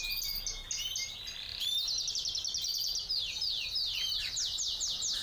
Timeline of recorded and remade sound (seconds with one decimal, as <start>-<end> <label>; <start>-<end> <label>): 0.0-5.2 recorded